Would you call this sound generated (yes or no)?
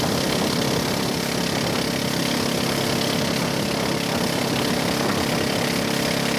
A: no